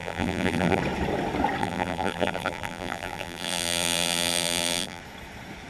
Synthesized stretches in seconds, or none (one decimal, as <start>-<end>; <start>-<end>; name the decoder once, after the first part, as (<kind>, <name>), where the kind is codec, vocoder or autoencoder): 0.0-0.8 (vocoder, BigVGAN v2); 1.6-5.0